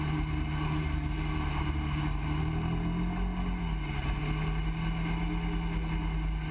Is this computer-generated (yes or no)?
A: no